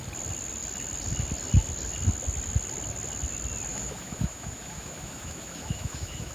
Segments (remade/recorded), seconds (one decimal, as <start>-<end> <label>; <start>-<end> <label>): 0.0-3.7 recorded; 3.7-6.3 remade

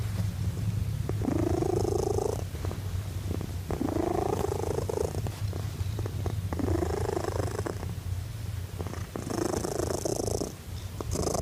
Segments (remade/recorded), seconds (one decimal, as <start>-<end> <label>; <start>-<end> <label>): 0.0-11.4 recorded